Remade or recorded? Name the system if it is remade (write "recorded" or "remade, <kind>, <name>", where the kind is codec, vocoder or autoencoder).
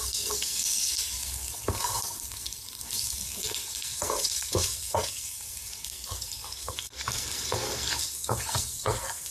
remade, codec, SNAC